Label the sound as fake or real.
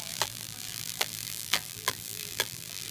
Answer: fake